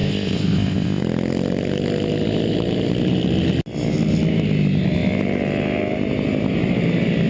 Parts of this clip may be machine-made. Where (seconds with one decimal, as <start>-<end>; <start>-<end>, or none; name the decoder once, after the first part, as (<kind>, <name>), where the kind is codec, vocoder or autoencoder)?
0.0-1.0 (codec, ZipCodec)